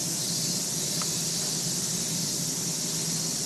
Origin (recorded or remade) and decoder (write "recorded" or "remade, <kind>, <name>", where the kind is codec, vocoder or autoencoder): recorded